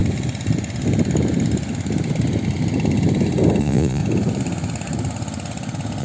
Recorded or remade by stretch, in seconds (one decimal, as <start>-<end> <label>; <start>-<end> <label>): 0.0-3.6 recorded; 3.6-4.0 remade; 4.0-6.0 recorded